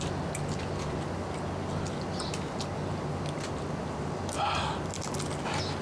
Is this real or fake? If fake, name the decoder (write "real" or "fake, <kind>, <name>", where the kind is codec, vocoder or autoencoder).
real